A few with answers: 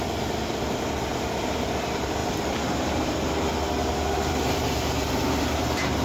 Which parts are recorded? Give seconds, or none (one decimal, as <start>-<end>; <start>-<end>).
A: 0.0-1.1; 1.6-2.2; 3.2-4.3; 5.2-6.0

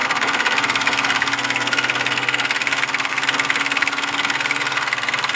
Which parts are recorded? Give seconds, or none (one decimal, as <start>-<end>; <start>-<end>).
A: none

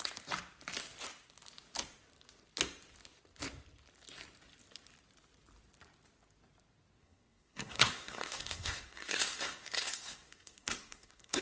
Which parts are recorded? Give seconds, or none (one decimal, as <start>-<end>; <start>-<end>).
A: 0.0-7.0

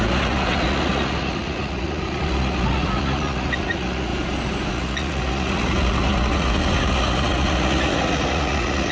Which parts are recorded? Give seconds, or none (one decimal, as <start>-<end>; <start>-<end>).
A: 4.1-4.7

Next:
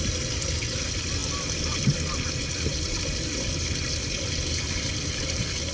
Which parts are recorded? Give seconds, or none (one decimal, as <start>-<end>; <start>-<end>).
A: 0.0-5.7

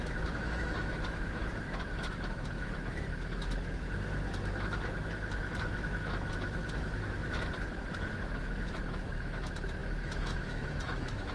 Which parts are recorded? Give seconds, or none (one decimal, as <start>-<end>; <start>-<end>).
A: none

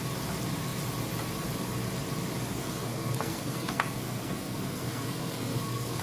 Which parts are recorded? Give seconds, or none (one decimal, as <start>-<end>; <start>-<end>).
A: 0.0-2.5

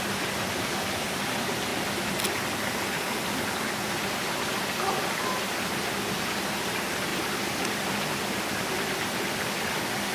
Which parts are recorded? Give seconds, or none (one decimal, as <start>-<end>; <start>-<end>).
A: 0.0-10.1